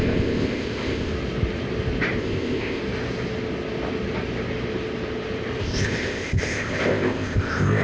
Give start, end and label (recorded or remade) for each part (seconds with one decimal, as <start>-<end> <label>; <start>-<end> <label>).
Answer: 0.0-1.1 remade; 1.1-2.2 recorded; 2.2-2.8 remade; 2.8-5.6 recorded; 5.6-7.8 remade